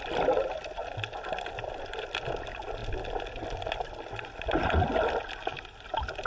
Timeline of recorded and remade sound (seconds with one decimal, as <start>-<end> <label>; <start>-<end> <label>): 0.0-6.3 recorded